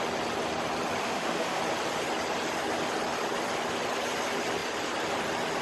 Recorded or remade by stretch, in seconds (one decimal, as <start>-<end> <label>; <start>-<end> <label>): 0.0-1.0 recorded; 1.0-1.6 remade; 1.6-5.6 recorded